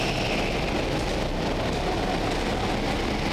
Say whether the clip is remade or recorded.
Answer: recorded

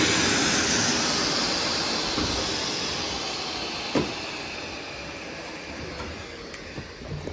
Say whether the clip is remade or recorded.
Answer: recorded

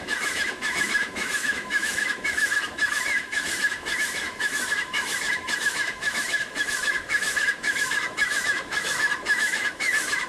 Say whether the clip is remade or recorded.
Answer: remade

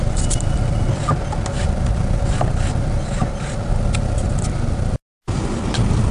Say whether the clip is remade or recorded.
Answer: recorded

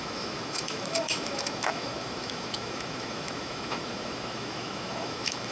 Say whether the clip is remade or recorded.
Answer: remade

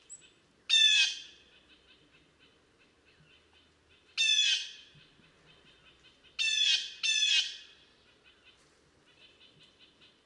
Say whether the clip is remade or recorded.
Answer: recorded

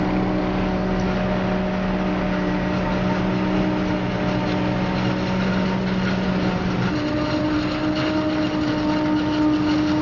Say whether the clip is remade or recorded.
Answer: recorded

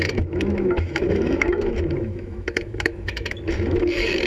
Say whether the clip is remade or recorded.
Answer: remade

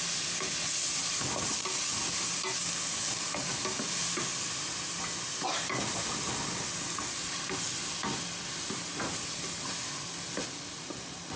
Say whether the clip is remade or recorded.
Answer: recorded